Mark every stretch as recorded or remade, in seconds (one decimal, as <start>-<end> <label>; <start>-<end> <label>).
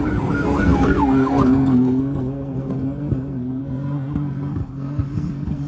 0.0-5.7 remade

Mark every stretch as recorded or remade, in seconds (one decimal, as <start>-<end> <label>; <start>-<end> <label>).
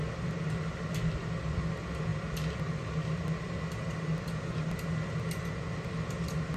0.0-6.6 recorded